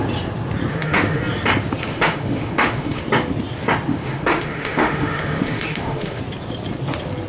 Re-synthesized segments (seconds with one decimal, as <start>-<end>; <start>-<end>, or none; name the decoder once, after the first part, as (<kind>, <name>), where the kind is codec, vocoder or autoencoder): 0.7-1.2 (autoencoder, DAC-VAE); 1.9-3.0; 3.9-6.2